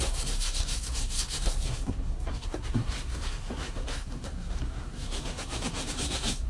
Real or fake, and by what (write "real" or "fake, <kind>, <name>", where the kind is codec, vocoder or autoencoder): fake, codec, SNAC